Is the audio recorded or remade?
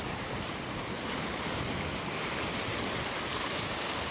recorded